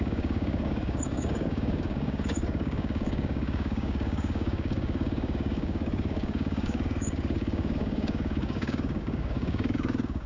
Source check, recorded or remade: remade